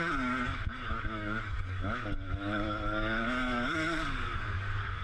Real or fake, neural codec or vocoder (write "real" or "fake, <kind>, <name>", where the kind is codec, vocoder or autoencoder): fake, codec, DAC